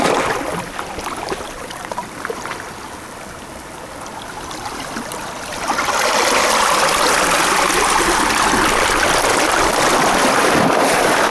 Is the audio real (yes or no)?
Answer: yes